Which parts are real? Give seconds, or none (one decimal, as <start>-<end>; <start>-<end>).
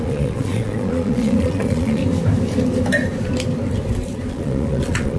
2.0-4.3